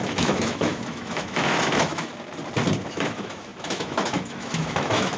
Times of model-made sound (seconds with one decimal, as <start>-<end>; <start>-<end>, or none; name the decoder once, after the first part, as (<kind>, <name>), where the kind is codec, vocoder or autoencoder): 0.0-2.1 (autoencoder, DAC-VAE); 2.8-5.2